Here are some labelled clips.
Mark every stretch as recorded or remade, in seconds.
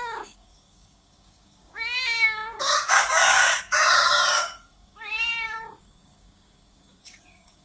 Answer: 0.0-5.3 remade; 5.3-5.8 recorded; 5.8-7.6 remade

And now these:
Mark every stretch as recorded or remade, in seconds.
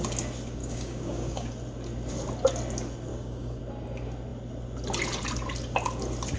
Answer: 0.0-0.6 recorded; 0.6-1.5 remade; 1.5-3.1 recorded; 3.1-3.6 remade; 3.6-6.4 recorded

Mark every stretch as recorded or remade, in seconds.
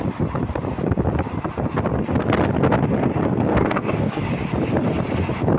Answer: 0.0-3.5 recorded; 3.5-4.2 remade; 4.2-5.6 recorded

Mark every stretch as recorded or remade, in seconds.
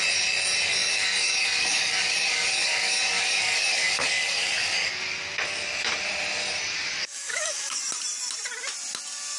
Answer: 0.0-0.7 recorded; 0.7-4.9 remade; 4.9-7.0 recorded; 7.0-7.8 remade; 7.8-9.4 recorded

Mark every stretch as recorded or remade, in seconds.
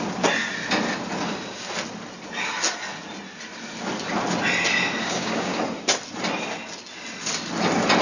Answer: 0.0-5.0 recorded; 5.0-5.6 remade; 5.6-8.0 recorded